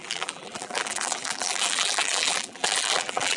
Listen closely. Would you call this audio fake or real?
fake